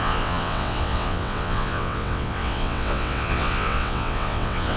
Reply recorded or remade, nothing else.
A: remade